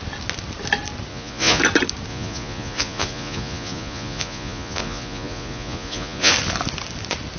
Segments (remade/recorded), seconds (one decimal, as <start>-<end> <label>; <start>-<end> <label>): 0.0-1.1 recorded; 1.1-1.6 remade; 1.6-2.1 recorded; 2.1-6.3 remade; 6.3-7.4 recorded